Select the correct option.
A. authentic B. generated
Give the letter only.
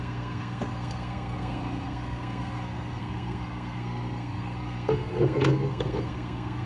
B